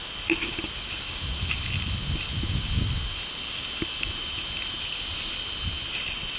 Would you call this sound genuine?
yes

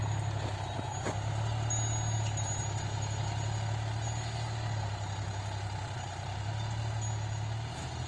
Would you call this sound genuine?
yes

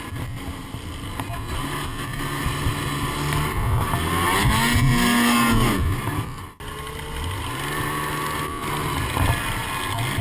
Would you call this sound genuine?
yes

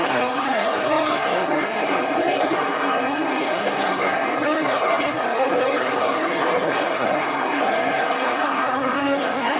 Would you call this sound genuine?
no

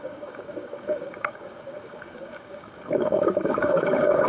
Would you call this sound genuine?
no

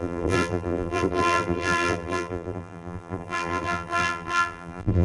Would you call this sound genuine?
no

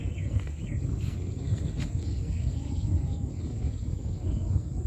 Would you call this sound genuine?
no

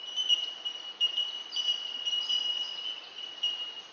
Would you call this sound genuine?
yes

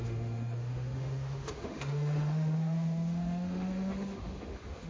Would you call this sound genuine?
no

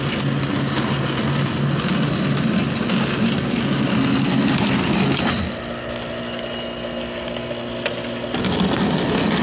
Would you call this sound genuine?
yes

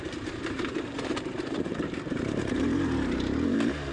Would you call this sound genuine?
no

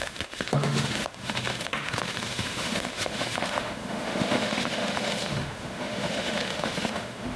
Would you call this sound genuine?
no